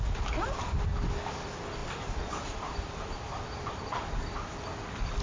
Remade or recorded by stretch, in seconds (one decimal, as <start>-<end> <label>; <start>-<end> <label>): 0.0-5.2 recorded